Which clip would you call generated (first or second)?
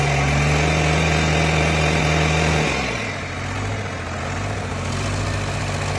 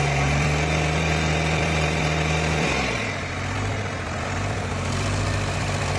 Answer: second